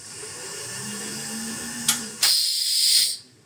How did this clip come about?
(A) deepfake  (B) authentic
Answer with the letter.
A